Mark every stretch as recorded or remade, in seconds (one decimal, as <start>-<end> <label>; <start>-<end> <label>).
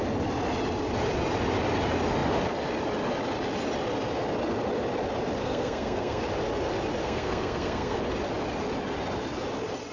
0.0-5.4 recorded; 5.4-6.2 remade; 6.2-7.0 recorded; 7.0-8.0 remade; 8.0-9.9 recorded